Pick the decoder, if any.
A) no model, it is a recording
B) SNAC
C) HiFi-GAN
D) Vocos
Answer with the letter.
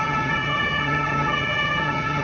C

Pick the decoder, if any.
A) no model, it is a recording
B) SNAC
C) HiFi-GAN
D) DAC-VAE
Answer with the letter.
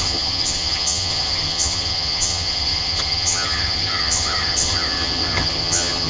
C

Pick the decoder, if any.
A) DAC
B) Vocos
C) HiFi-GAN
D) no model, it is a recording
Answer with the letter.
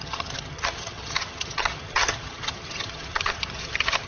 C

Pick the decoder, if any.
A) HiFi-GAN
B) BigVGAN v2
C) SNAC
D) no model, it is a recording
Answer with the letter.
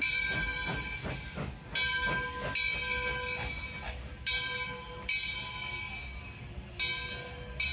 D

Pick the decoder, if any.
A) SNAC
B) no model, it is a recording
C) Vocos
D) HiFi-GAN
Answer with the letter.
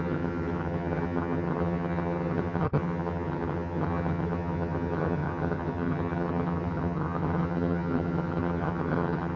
D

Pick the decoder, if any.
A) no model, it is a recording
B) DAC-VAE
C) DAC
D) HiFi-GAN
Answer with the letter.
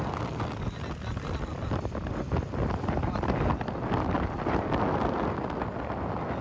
A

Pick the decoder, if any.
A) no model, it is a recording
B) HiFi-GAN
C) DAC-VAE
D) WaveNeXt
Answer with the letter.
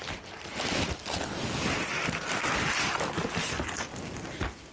A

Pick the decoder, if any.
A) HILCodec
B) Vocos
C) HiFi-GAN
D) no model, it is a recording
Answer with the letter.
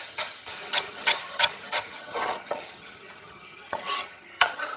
C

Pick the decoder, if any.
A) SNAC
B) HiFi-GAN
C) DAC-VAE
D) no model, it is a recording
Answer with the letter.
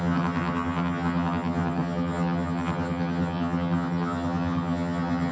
B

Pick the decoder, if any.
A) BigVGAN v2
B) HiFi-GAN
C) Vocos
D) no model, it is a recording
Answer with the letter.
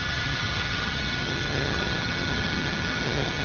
B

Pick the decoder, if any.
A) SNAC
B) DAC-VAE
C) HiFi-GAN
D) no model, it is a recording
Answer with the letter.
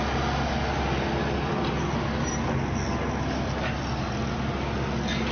D